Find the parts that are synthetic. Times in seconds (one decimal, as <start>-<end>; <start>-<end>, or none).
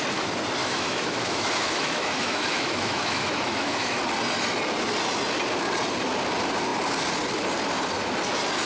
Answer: 0.6-4.0